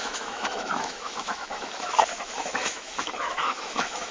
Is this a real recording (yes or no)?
no